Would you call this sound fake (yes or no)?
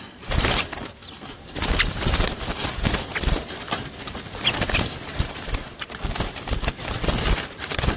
yes